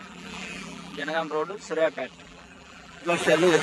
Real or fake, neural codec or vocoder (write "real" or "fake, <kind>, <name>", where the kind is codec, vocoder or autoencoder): fake, vocoder, BigVGAN v2